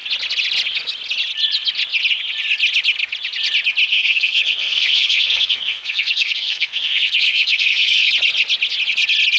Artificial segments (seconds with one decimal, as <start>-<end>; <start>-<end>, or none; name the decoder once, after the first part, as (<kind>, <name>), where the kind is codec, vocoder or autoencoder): 3.9-8.1 (codec, SNAC)

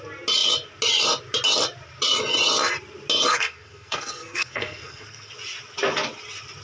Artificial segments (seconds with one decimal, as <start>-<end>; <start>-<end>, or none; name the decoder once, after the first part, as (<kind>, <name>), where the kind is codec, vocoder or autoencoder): 3.3-5.3 (codec, SNAC)